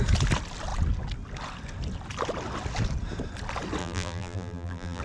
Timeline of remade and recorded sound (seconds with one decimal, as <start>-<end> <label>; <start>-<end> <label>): 0.0-3.8 recorded; 3.8-5.0 remade